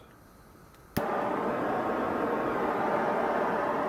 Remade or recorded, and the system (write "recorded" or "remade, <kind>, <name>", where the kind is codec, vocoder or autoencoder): recorded